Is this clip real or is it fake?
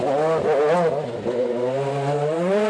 real